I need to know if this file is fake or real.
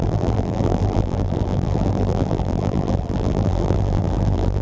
fake